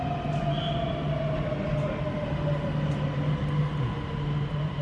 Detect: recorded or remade recorded